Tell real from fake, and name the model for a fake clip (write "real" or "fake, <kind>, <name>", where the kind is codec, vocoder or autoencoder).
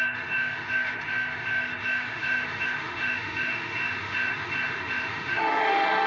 fake, autoencoder, DAC-VAE